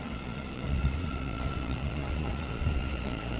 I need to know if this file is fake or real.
fake